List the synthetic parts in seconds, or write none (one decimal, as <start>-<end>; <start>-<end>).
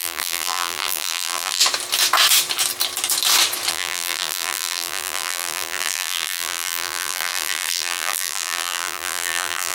0.0-1.6; 3.7-9.7